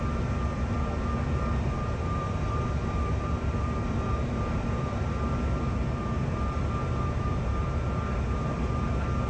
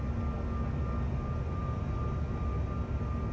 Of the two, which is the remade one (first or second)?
first